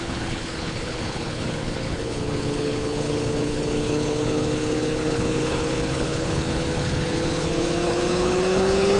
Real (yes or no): no